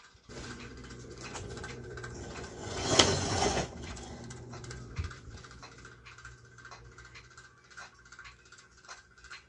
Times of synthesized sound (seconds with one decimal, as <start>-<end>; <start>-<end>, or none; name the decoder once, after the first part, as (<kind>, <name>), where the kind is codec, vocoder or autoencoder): 0.0-5.6 (vocoder, Vocos); 7.2-7.8; 8.6-9.5